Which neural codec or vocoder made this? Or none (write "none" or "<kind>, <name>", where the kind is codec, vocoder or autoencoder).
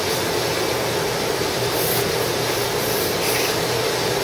none